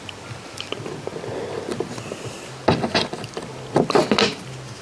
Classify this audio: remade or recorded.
recorded